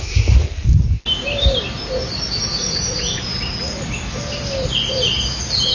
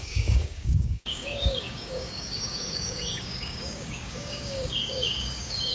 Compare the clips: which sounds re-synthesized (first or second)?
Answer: second